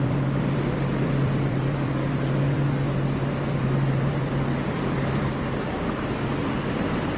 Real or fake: fake